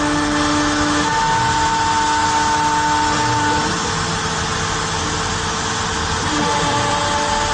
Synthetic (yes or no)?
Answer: no